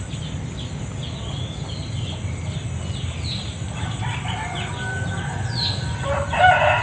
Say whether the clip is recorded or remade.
recorded